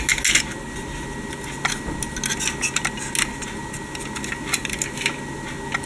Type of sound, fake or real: real